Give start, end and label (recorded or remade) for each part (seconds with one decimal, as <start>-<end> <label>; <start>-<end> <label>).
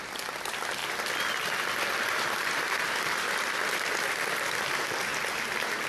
0.0-5.1 remade; 5.1-5.9 recorded